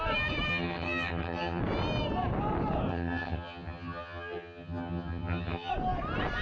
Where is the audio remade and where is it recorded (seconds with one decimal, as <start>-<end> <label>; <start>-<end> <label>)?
0.0-0.5 recorded; 0.5-1.6 remade; 1.6-2.9 recorded; 2.9-5.7 remade; 5.7-6.4 recorded